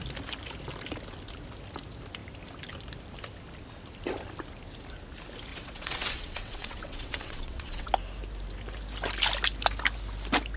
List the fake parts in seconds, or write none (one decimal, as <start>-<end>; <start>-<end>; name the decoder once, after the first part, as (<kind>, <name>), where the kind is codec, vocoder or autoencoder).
5.5-7.9 (vocoder, WaveNeXt)